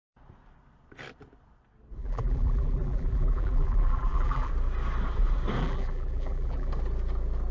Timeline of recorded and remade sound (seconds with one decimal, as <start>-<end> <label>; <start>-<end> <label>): 0.0-2.0 recorded; 2.0-4.5 remade; 4.5-5.6 recorded; 5.6-6.7 remade; 6.7-7.5 recorded